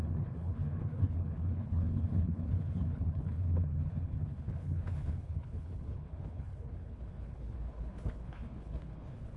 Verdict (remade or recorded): remade